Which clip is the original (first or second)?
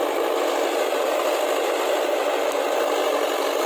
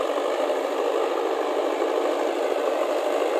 first